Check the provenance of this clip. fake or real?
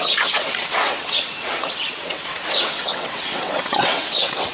fake